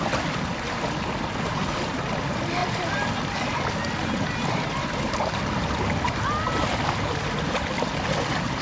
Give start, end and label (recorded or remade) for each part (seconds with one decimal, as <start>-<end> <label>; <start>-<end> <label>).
0.0-8.6 recorded